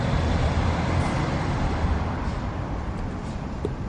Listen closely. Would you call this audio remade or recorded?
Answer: recorded